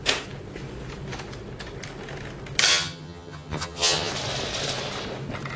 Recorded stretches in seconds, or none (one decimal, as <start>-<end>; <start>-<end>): 0.0-2.7; 4.1-5.6